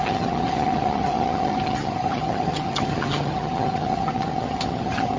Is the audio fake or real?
fake